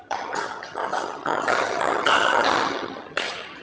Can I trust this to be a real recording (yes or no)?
no